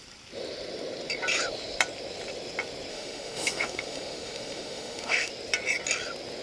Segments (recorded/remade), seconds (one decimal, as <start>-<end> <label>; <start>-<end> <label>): 0.0-2.9 recorded; 2.9-5.3 remade; 5.3-6.4 recorded